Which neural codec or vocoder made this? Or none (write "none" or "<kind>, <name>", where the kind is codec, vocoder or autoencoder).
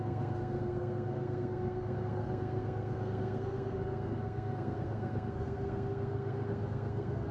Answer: codec, SNAC